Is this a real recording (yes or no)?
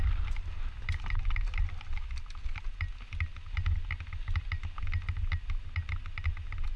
yes